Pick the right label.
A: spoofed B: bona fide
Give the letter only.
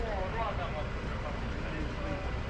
B